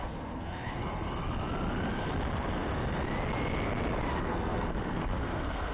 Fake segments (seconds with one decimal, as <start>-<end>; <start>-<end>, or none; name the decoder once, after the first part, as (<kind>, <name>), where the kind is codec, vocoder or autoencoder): 0.0-0.8 (codec, SNAC); 4.2-5.7